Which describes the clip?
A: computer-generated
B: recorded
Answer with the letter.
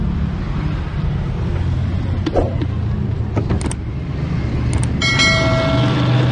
B